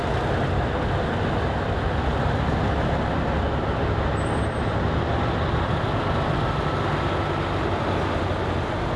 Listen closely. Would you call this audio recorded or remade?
recorded